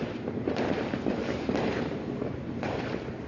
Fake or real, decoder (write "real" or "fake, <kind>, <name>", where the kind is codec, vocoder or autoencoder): fake, vocoder, BigVGAN v2